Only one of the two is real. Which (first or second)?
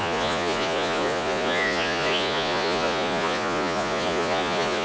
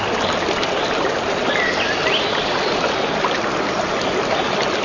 second